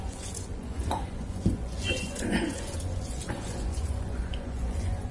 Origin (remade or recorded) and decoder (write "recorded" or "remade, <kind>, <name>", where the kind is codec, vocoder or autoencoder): remade, vocoder, Vocos